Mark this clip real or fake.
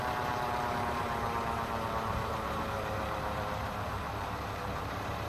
fake